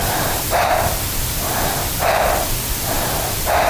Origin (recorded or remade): recorded